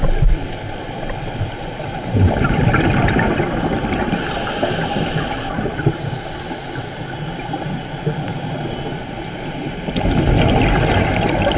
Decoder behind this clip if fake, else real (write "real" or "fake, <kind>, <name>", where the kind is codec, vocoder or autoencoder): real